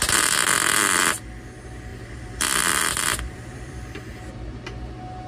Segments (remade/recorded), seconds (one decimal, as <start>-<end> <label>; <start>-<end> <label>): 0.0-1.9 recorded; 1.9-4.0 remade; 4.0-5.3 recorded